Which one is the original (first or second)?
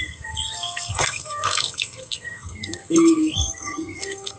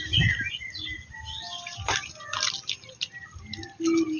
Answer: second